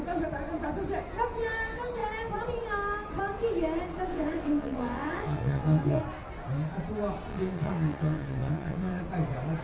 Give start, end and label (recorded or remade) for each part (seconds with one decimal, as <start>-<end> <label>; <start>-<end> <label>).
0.0-4.1 recorded; 4.1-6.0 remade; 6.0-7.3 recorded; 7.3-9.0 remade; 9.0-9.6 recorded